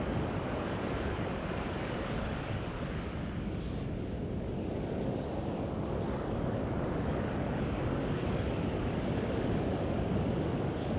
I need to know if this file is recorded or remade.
remade